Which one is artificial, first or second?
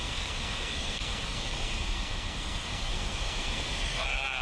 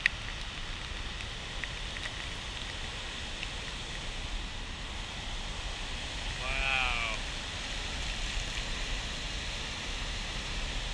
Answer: first